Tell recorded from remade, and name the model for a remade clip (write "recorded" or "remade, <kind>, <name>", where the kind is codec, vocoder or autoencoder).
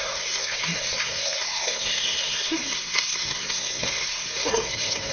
remade, codec, SNAC